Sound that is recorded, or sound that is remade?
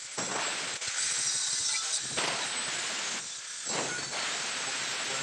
recorded